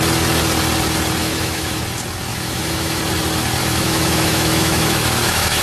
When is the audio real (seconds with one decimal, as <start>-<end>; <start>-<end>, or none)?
0.0-1.2; 1.8-2.3; 3.0-3.6